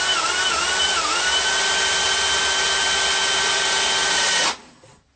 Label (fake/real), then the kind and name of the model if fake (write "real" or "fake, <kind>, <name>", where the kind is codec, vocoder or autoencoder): real